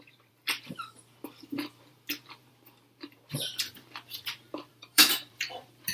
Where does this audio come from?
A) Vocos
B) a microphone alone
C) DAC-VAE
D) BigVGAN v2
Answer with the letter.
D